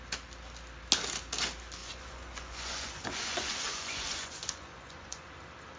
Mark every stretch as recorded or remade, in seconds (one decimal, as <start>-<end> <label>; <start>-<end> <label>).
0.0-1.8 recorded; 1.8-5.3 remade; 5.3-5.8 recorded